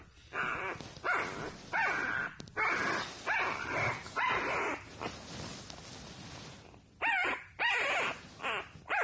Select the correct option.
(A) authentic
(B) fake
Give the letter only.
A